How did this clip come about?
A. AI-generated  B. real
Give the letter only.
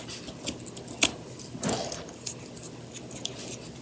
B